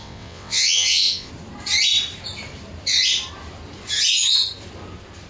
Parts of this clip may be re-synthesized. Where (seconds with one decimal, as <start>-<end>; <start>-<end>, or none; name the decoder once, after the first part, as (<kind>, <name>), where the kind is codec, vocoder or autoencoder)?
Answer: 0.0-1.3 (vocoder, WaveNeXt)